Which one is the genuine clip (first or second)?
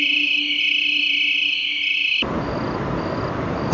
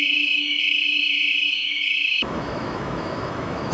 first